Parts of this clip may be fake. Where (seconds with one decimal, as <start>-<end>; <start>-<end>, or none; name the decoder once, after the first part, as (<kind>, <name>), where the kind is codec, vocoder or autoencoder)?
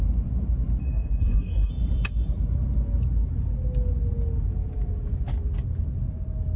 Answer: 0.8-1.7 (codec, SNAC)